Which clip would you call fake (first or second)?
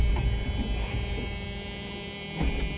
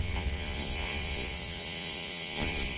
second